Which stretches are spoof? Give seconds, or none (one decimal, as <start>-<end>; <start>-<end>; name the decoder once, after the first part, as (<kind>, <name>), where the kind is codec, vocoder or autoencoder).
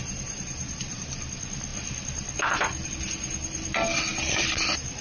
none